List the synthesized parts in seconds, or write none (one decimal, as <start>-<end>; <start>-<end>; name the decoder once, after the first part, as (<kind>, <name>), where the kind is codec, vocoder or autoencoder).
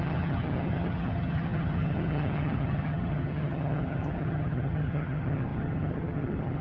0.0-6.6 (vocoder, HiFi-GAN)